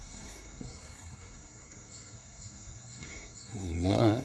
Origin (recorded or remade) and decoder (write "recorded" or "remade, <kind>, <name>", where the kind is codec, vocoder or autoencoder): remade, codec, SNAC